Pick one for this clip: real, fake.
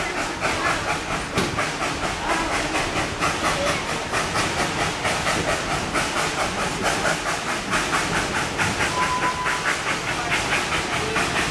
real